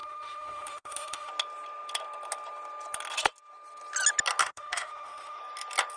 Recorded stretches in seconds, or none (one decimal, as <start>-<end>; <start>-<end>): 1.3-4.4; 5.4-6.0